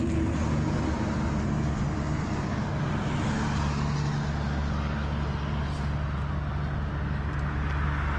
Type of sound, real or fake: real